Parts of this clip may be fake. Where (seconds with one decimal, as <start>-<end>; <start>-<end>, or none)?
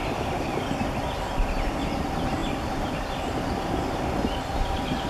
0.0-0.7; 2.4-5.1